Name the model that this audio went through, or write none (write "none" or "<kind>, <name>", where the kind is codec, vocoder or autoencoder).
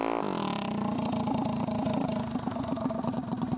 none